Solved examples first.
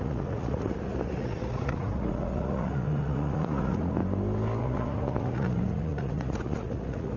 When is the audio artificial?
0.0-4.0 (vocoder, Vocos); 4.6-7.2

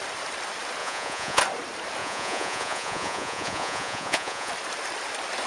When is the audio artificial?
0.8-1.4 (vocoder, Vocos); 2.0-4.5

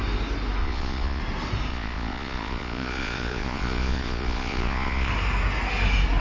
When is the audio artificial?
0.6-1.2 (vocoder, Vocos); 1.7-5.1

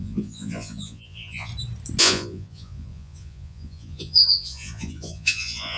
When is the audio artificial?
0.0-1.5 (vocoder, Vocos); 2.0-5.8

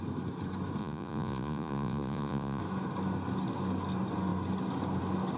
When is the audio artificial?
0.8-2.6 (vocoder, Vocos)

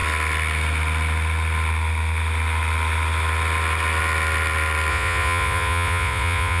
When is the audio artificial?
4.9-6.6 (vocoder, Vocos)